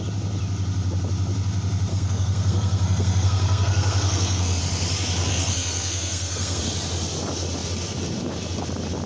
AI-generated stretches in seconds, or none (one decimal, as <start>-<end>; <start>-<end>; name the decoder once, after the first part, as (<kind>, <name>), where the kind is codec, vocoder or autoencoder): 1.9-4.6 (codec, SNAC); 5.3-6.6